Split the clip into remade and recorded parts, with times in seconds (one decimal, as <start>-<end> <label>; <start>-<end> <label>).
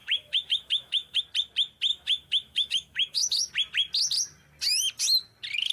0.0-1.2 remade; 1.2-1.9 recorded; 1.9-3.5 remade; 3.5-5.7 recorded